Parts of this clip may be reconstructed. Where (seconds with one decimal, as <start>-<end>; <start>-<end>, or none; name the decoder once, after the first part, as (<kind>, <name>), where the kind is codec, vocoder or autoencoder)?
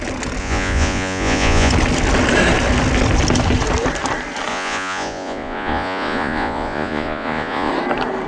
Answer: 0.4-1.7 (vocoder, Vocos); 4.5-7.7